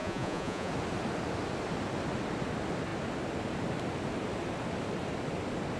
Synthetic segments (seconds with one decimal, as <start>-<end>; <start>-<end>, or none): 0.0-0.7